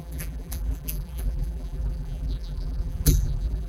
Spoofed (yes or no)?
yes